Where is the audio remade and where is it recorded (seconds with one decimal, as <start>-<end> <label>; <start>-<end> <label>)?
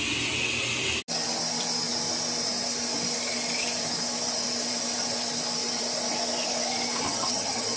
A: 0.0-7.0 recorded; 7.0-7.8 remade